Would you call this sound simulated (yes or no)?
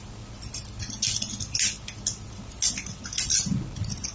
no